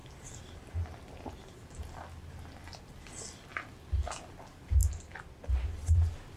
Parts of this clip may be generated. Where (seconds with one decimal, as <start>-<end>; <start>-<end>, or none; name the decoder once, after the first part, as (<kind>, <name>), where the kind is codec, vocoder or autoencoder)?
none